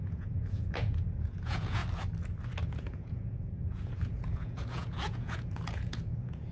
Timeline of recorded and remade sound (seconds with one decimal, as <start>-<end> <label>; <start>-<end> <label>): 0.0-1.8 remade; 1.8-2.7 recorded; 2.7-6.5 remade